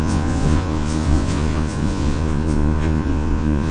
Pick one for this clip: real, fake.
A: fake